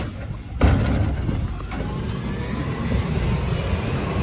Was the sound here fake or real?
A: real